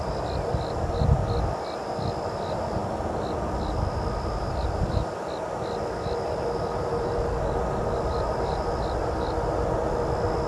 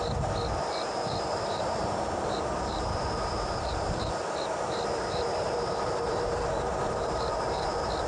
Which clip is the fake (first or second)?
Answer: second